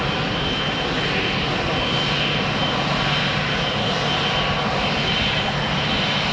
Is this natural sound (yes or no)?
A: yes